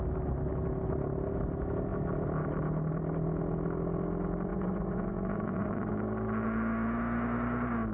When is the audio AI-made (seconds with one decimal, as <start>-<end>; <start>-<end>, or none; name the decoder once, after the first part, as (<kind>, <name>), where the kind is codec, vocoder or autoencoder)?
4.5-5.9 (vocoder, Vocos)